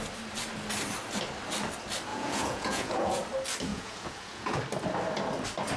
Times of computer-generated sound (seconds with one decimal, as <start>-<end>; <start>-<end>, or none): 2.1-3.2; 3.7-4.6